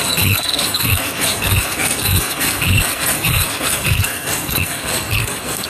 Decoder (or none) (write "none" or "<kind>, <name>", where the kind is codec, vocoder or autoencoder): codec, SNAC